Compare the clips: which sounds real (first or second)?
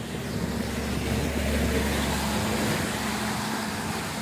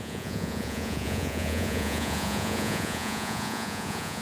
first